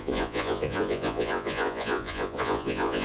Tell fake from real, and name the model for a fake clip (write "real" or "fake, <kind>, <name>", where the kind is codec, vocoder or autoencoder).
fake, vocoder, Vocos